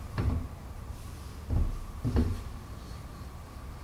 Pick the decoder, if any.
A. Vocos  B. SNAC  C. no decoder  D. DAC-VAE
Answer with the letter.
C